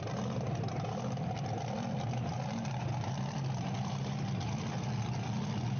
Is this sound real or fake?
real